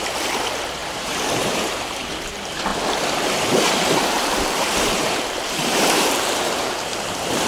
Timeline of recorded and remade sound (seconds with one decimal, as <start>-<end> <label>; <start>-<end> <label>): 0.0-0.8 recorded; 0.8-2.1 remade; 2.1-2.7 recorded; 2.7-6.7 remade; 6.7-7.5 recorded